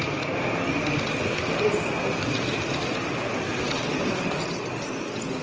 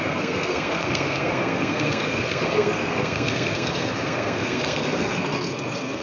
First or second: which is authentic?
first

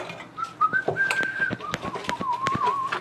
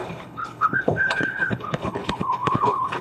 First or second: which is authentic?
first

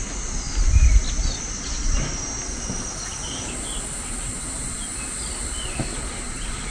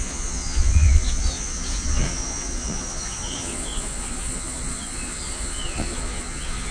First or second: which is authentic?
first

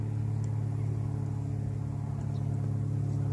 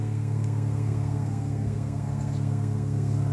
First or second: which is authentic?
first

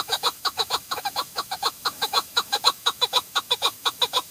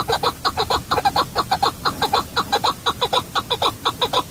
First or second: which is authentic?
second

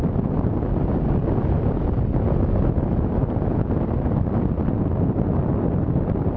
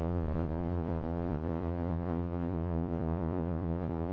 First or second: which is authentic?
first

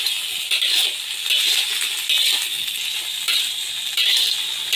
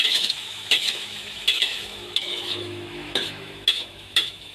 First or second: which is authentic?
first